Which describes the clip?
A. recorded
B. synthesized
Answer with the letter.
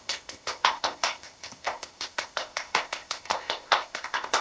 B